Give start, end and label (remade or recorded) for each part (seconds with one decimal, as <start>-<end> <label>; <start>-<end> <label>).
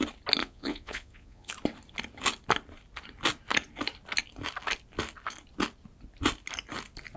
0.0-0.4 recorded; 0.4-1.5 remade; 1.5-7.2 recorded